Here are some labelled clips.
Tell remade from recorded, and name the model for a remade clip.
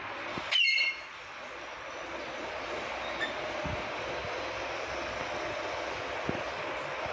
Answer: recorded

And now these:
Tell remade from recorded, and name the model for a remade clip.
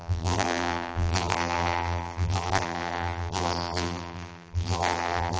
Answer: remade, vocoder, BigVGAN v2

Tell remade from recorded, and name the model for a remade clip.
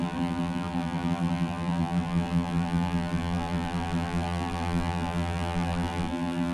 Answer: remade, vocoder, BigVGAN v2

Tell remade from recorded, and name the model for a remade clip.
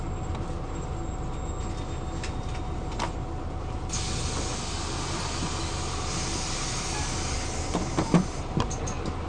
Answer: recorded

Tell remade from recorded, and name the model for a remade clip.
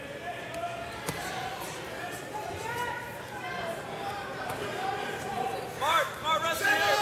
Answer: remade, vocoder, BigVGAN v2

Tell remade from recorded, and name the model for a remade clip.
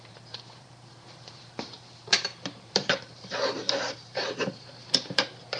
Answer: remade, vocoder, BigVGAN v2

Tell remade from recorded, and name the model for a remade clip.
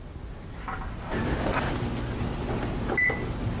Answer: recorded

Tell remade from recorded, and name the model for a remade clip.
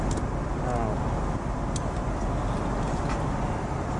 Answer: recorded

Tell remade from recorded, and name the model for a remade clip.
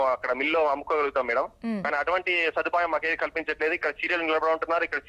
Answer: recorded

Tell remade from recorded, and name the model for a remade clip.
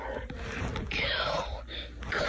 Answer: recorded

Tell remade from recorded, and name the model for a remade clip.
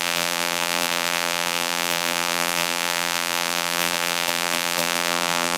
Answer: remade, vocoder, BigVGAN v2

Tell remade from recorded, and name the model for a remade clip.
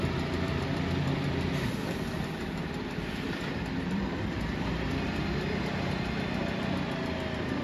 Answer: remade, vocoder, BigVGAN v2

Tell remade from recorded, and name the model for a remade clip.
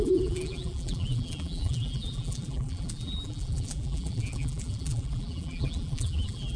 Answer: remade, vocoder, BigVGAN v2